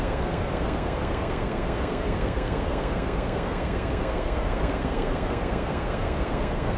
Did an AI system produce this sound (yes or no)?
yes